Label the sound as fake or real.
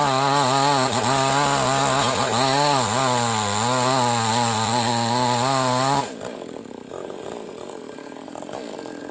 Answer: real